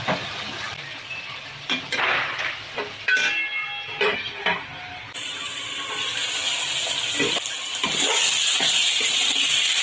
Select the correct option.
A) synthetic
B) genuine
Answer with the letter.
B